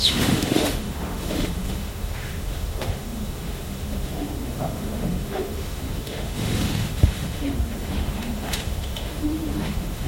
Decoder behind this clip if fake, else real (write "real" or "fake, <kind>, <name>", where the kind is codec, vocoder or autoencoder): fake, autoencoder, DAC-VAE